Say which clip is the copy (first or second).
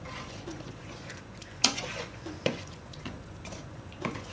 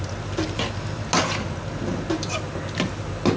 first